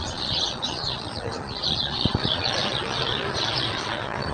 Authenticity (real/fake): fake